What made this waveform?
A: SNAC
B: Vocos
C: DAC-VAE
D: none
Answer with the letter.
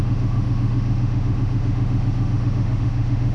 C